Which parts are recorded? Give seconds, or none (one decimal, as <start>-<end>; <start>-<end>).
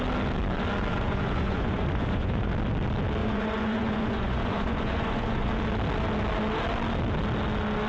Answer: 0.0-0.9; 2.5-3.2; 5.5-7.9